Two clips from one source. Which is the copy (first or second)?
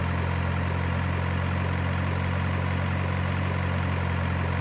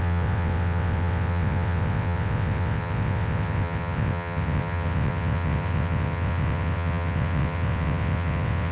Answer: second